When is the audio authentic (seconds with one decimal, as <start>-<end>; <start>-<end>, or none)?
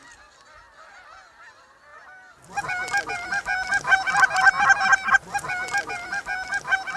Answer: 0.0-7.0